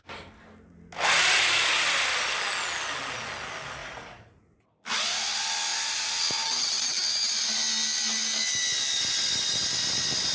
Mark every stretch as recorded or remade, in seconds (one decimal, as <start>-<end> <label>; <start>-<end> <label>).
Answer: 0.0-3.8 recorded; 3.8-4.4 remade; 4.4-10.3 recorded